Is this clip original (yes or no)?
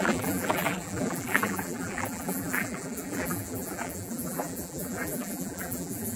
no